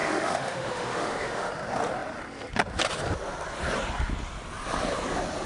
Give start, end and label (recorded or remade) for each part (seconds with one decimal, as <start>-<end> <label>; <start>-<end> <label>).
0.0-1.5 remade; 1.5-5.5 recorded